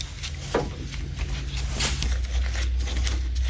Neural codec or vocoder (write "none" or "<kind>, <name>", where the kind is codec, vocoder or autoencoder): none